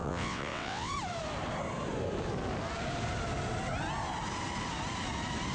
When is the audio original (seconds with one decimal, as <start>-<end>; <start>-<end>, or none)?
0.9-5.5